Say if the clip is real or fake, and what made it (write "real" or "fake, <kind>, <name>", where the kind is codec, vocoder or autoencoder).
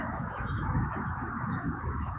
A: fake, autoencoder, DAC-VAE